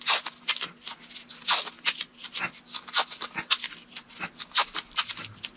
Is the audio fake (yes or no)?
no